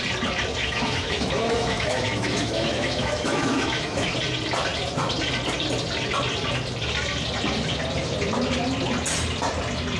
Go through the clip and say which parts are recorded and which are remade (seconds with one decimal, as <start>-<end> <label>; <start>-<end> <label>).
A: 0.0-0.6 recorded; 0.6-4.1 remade; 4.1-10.0 recorded